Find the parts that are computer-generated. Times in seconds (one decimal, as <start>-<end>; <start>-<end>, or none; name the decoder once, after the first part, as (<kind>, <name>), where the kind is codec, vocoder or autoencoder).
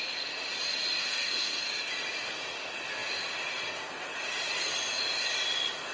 1.0-1.7 (codec, SNAC)